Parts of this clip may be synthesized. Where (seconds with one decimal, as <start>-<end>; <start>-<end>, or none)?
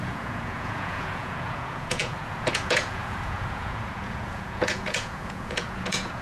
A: 0.0-6.2